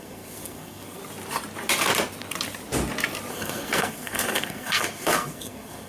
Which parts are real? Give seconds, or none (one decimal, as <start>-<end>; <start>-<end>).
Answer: 1.0-3.3